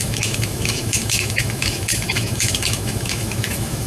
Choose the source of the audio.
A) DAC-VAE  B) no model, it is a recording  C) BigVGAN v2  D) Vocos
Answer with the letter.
A